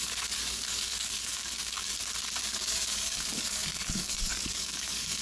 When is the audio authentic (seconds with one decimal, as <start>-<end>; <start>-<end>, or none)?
1.9-2.4